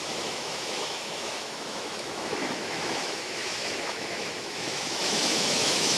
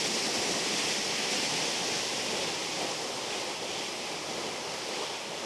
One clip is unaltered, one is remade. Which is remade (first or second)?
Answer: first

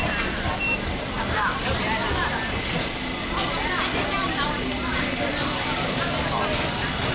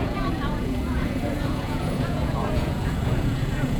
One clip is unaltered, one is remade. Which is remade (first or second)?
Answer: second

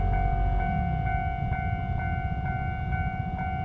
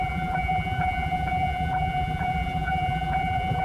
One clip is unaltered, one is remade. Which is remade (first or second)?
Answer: second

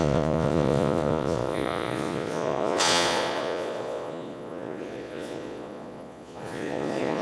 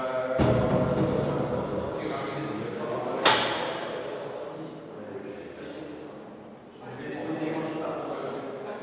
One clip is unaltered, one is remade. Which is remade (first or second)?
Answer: first